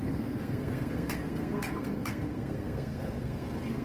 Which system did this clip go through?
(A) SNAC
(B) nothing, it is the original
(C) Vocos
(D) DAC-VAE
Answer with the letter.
A